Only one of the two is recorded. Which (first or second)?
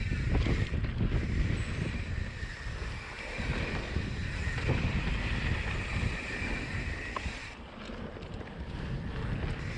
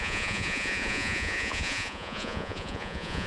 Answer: first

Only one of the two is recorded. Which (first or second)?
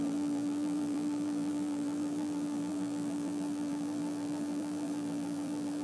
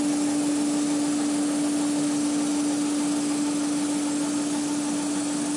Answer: second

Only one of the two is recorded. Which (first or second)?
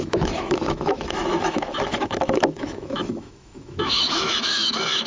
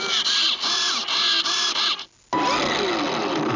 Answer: second